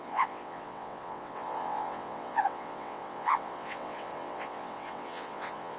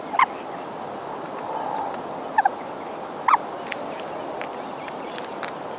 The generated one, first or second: first